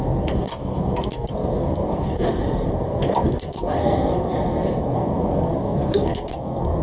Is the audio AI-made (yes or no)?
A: yes